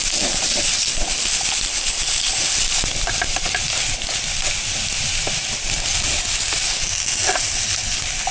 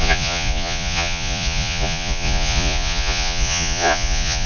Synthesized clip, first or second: second